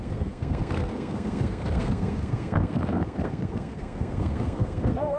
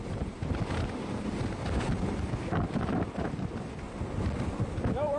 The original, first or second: second